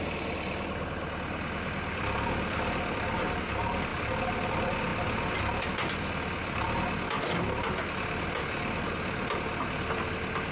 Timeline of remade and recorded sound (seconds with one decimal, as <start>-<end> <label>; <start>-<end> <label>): 0.0-10.5 recorded